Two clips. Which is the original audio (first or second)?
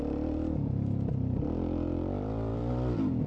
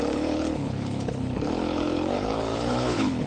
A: first